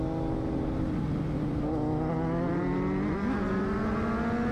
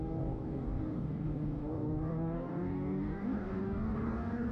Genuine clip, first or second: first